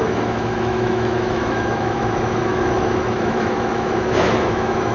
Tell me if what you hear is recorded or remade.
remade